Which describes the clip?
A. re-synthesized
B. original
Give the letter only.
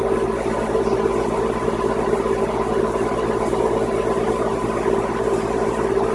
B